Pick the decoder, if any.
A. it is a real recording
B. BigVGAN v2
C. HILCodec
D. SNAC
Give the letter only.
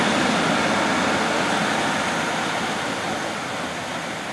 A